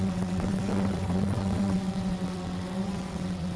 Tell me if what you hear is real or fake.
fake